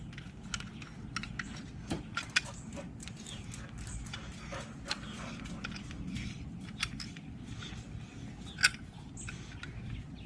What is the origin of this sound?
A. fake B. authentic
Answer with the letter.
B